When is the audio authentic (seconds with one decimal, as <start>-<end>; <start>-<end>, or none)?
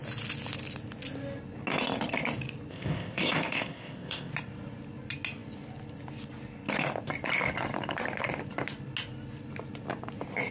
0.0-2.7; 4.3-10.5